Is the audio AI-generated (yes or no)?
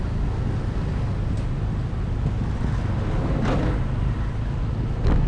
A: no